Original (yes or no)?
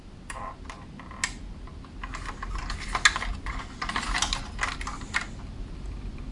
yes